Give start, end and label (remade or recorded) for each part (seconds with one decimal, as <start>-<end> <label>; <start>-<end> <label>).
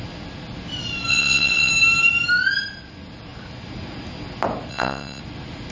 0.0-1.1 recorded; 1.1-1.7 remade; 1.7-4.7 recorded; 4.7-5.2 remade; 5.2-5.7 recorded